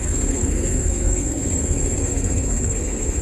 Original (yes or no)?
no